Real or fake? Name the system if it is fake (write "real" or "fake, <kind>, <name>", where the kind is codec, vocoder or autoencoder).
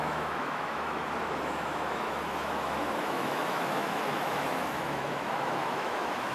fake, autoencoder, DAC-VAE